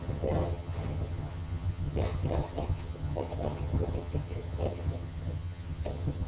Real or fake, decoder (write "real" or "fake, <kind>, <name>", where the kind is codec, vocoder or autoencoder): fake, vocoder, HiFi-GAN